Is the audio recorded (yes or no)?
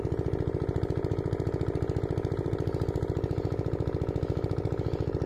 yes